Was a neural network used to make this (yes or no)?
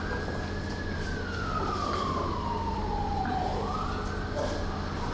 no